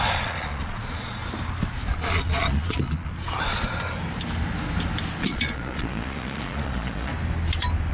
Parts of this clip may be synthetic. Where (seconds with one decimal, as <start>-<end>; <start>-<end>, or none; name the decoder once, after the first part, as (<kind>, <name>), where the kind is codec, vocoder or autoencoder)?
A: 0.0-1.2 (vocoder, Vocos); 1.9-3.1; 5.2-7.1

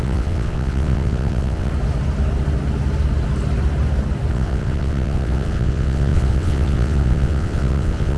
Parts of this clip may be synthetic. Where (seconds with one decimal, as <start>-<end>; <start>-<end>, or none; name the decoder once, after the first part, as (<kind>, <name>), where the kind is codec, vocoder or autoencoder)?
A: 0.0-1.7 (vocoder, WaveNeXt); 4.3-8.2